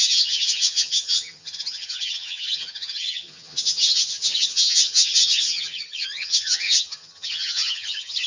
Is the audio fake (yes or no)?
yes